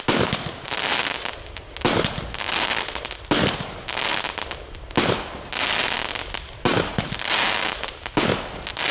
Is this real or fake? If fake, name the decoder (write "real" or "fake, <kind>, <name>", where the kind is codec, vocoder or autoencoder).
real